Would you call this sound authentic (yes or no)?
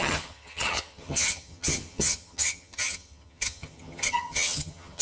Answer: no